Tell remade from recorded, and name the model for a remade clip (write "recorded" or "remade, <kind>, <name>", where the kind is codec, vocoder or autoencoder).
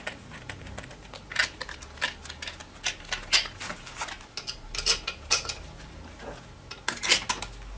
recorded